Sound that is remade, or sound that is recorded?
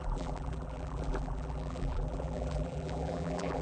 remade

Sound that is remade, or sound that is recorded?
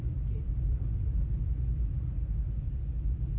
recorded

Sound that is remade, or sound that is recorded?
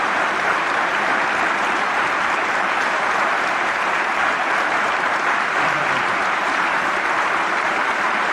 remade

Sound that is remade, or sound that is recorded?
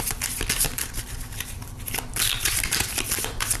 remade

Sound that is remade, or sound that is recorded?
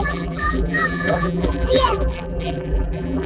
remade